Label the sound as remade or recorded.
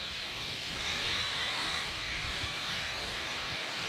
remade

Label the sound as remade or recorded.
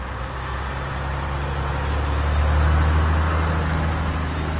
recorded